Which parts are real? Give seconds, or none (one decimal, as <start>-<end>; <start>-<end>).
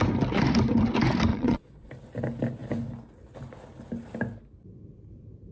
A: 0.0-1.3; 1.9-5.5